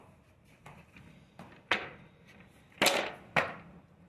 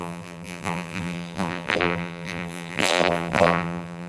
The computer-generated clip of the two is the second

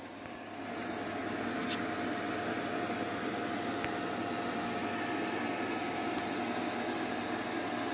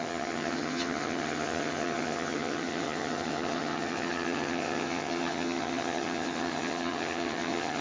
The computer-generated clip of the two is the second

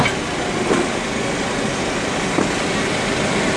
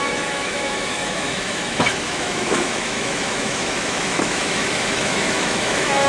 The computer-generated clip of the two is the second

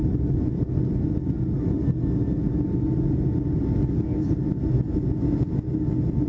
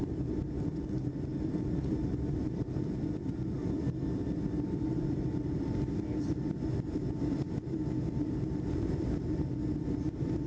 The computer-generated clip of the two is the second